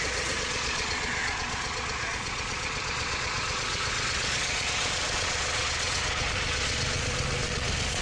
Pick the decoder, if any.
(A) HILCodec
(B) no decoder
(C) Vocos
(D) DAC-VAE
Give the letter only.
C